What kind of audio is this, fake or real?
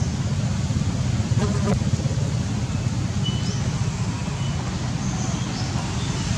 real